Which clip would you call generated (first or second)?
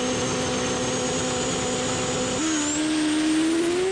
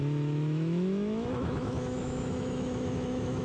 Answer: second